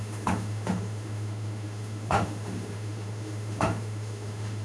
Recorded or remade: remade